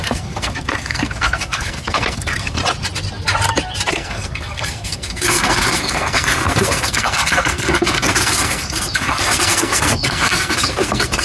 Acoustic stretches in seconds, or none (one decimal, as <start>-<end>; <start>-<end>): 2.6-3.9